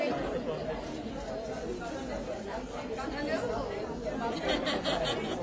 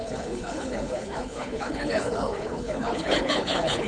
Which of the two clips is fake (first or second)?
second